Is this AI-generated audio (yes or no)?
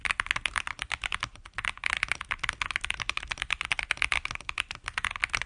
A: no